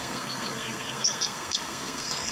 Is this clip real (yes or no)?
no